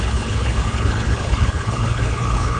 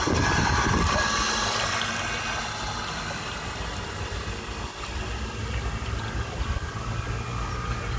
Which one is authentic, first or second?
second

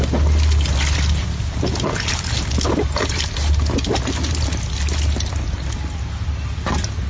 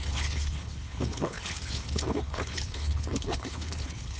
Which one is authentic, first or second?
first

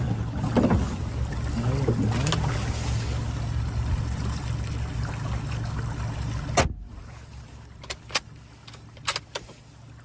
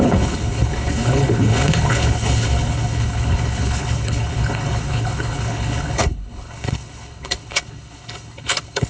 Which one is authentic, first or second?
first